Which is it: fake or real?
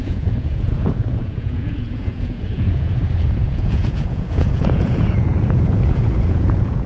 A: fake